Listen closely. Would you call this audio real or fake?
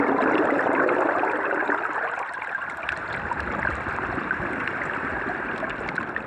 real